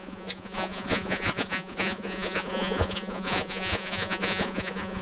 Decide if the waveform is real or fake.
fake